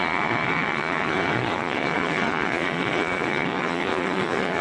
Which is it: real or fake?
fake